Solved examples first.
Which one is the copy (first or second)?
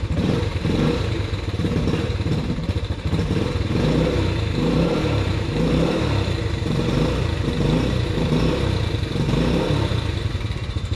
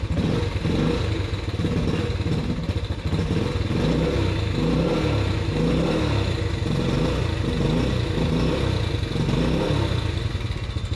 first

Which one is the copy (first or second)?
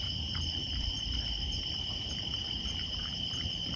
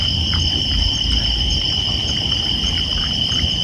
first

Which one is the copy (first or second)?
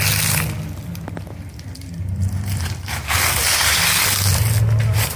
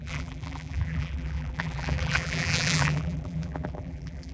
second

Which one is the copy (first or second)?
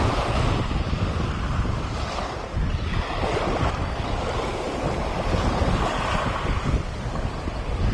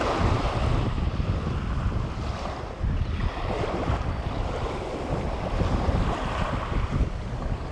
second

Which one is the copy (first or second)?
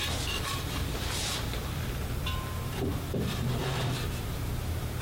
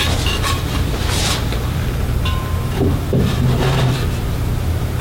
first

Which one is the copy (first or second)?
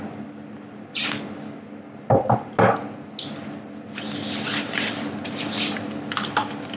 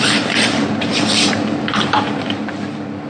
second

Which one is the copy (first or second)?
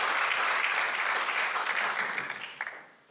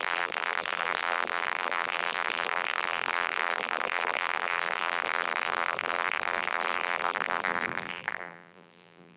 second